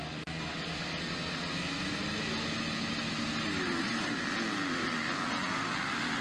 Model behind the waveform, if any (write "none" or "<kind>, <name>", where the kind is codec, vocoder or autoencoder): none